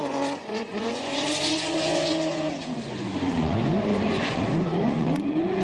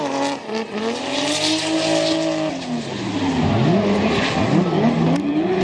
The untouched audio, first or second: second